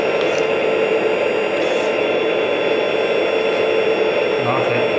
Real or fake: real